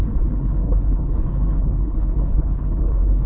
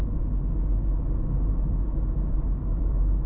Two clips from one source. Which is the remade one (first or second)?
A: first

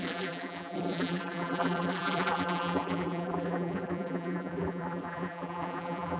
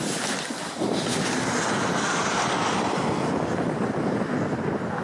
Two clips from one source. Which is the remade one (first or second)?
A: first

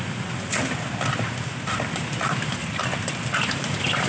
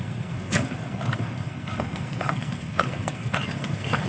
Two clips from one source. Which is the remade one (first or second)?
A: second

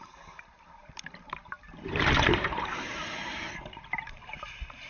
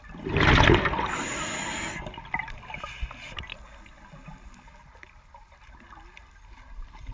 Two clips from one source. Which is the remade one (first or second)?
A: first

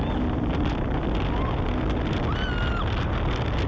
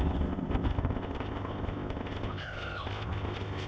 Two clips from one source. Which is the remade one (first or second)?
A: second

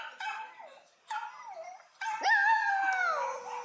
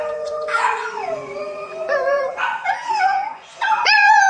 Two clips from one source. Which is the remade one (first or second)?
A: second